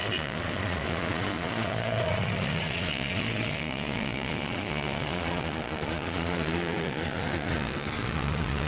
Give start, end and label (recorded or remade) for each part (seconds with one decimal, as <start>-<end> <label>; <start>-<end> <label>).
0.0-8.7 remade